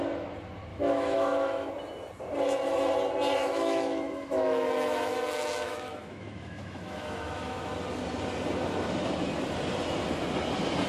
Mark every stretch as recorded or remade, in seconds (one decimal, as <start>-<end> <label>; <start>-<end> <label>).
0.0-0.7 recorded; 0.7-1.7 remade; 1.7-3.4 recorded; 3.4-7.7 remade; 7.7-10.9 recorded